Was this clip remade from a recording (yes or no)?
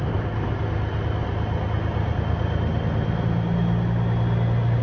no